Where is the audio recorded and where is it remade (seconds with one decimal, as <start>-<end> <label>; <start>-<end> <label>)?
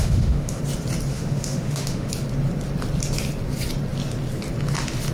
0.0-0.6 remade; 0.6-1.1 recorded; 1.1-2.1 remade; 2.1-5.1 recorded